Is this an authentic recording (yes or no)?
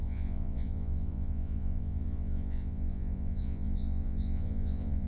no